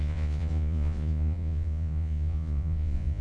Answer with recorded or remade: remade